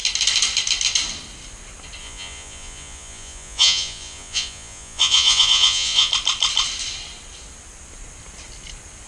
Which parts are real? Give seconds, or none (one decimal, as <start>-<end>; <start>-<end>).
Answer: 0.0-2.0; 6.1-9.1